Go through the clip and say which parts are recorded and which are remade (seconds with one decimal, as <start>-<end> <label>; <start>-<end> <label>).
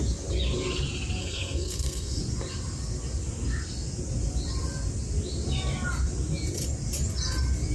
0.0-1.2 recorded; 1.2-2.2 remade; 2.2-7.7 recorded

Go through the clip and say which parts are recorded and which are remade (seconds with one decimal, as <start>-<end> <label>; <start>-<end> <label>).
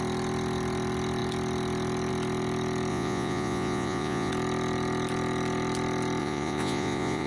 0.0-2.9 recorded; 2.9-4.3 remade; 4.3-6.2 recorded; 6.2-7.3 remade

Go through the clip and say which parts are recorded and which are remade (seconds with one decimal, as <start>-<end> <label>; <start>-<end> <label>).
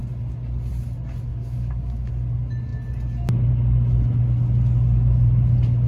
0.0-1.3 recorded; 1.3-2.1 remade; 2.1-5.9 recorded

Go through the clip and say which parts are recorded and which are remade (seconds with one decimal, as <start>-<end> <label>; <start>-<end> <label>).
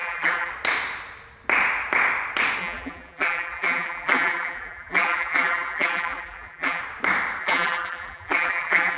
0.0-0.5 remade; 0.5-2.6 recorded; 2.6-6.8 remade; 6.8-7.4 recorded; 7.4-9.0 remade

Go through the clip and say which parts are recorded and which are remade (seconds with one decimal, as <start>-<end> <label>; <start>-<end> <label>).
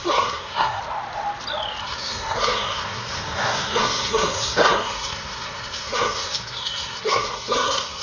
0.0-0.8 remade; 0.8-1.8 recorded; 1.8-8.0 remade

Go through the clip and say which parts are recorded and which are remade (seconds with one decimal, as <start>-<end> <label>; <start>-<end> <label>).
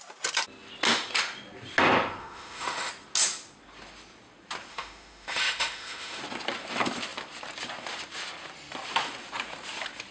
0.0-2.2 recorded; 2.2-2.9 remade; 2.9-4.7 recorded; 4.7-6.2 remade; 6.2-10.1 recorded